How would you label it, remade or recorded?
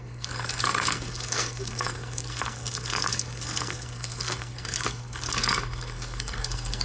remade